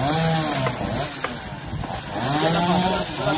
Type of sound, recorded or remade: recorded